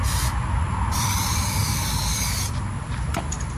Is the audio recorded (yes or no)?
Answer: yes